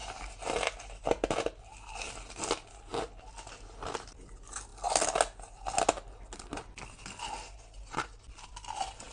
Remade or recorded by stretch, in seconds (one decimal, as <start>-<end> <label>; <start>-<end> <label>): 0.0-9.1 recorded